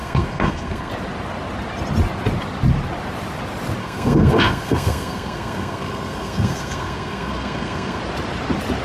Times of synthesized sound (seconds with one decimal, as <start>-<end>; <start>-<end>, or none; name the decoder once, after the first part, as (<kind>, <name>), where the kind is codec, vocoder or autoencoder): 0.0-0.9 (codec, SNAC); 3.8-8.0